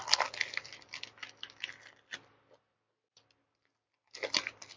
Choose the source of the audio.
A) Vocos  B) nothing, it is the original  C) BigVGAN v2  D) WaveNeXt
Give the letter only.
B